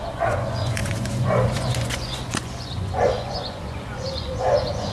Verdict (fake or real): fake